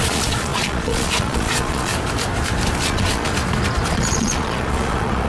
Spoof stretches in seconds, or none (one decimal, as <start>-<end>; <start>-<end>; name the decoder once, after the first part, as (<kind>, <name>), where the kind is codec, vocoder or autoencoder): 0.0-1.9 (vocoder, Vocos); 2.8-3.3; 3.9-5.3